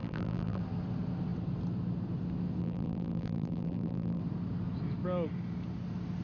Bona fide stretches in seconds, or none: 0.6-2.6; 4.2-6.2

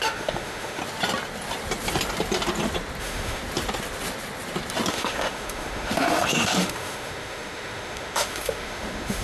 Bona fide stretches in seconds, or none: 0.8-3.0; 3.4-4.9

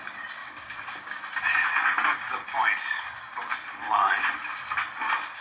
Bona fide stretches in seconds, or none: 0.0-0.4; 1.2-5.4

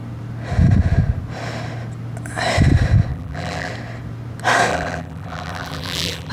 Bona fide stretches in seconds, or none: 0.0-3.1; 3.7-4.7

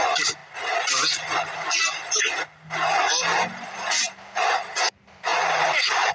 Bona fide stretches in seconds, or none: 0.4-4.1